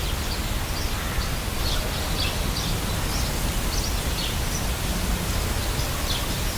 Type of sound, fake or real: real